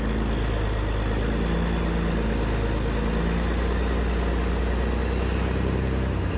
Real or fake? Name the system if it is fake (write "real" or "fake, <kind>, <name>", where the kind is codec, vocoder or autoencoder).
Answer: real